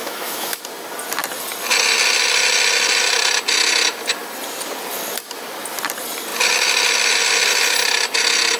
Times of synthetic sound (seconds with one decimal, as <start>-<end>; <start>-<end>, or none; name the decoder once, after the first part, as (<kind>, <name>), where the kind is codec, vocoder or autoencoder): 0.0-0.6 (autoencoder, DAC-VAE)